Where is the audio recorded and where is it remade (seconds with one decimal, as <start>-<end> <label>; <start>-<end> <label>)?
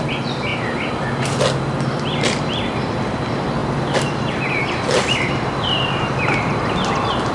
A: 0.0-7.3 recorded